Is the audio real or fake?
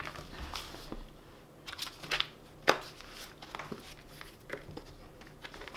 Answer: real